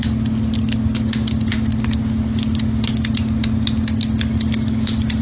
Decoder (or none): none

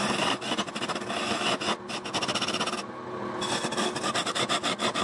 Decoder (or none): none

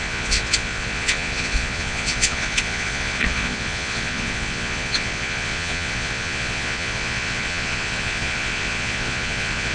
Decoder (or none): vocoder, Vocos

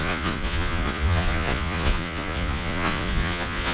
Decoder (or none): vocoder, Vocos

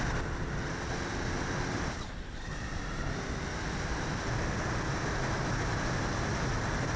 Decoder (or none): none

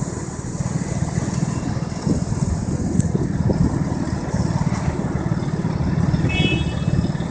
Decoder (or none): none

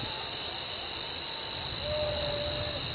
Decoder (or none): none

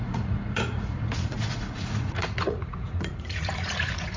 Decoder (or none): vocoder, Vocos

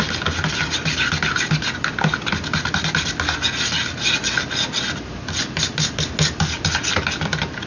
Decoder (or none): none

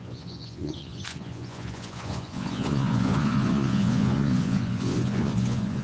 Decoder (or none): vocoder, Vocos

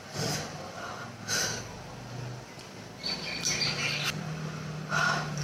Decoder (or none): none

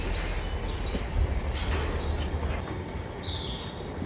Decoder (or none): none